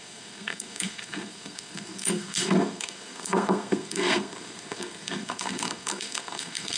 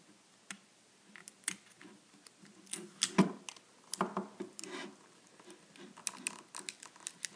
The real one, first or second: second